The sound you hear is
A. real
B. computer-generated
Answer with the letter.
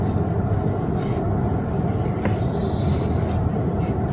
A